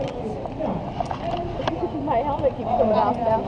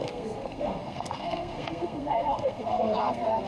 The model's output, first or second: second